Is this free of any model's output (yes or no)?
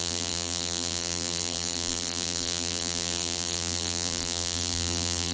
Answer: no